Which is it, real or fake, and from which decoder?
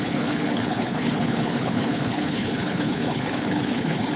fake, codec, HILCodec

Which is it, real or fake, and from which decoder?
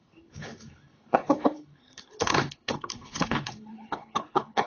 fake, codec, HILCodec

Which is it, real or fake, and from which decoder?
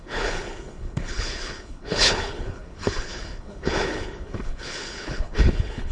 fake, codec, HILCodec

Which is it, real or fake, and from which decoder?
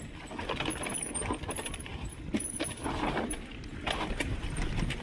real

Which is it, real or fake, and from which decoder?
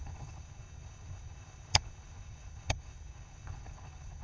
fake, codec, HILCodec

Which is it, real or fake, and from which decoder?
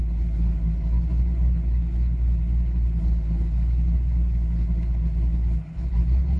fake, codec, HILCodec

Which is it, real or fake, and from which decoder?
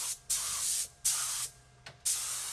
real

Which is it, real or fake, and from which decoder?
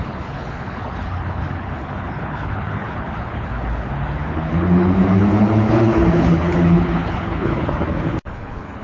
fake, codec, HILCodec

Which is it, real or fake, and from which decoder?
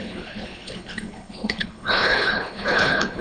fake, codec, HILCodec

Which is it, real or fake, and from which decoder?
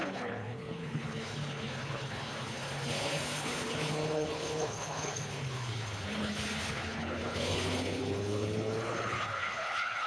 fake, codec, HILCodec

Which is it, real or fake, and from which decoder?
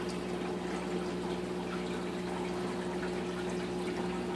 real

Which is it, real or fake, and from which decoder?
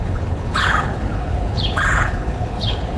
fake, codec, HILCodec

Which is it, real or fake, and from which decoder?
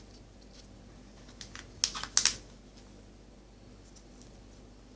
real